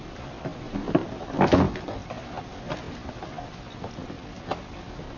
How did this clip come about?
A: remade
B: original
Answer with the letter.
B